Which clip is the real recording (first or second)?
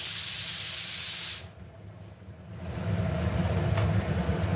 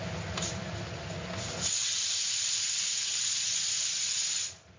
first